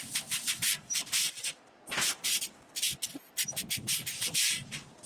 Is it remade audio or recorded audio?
remade